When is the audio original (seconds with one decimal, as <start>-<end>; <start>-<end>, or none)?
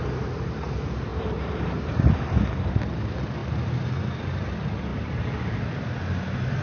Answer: 0.0-1.1; 2.4-3.4; 4.2-4.9; 6.0-6.6